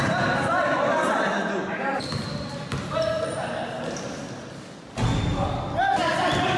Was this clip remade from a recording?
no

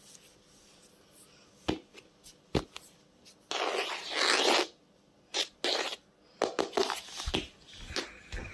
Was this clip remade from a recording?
no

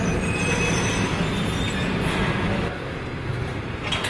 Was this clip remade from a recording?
no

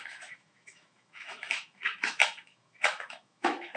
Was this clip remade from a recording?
yes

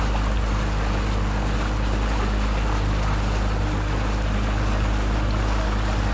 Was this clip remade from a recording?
no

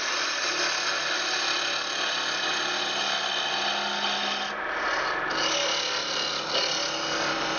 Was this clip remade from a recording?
no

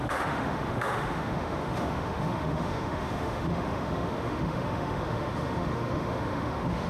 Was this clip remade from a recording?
yes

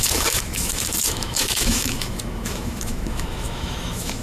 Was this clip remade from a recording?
yes